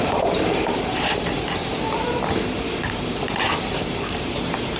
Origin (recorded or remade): remade